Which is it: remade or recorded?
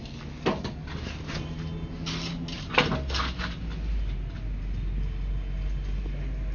recorded